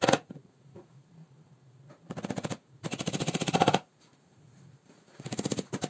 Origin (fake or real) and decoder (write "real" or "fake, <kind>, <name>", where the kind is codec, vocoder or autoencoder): fake, vocoder, Vocos